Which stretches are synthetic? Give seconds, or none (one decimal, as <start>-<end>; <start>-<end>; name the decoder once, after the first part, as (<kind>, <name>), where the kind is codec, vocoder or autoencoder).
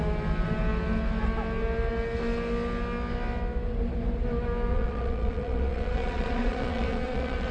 4.7-7.5 (vocoder, Vocos)